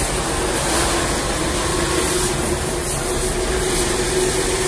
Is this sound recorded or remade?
recorded